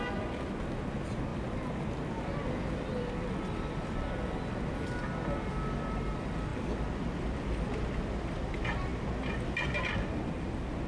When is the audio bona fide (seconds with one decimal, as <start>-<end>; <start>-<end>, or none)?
0.0-1.3; 4.6-6.5; 7.6-10.9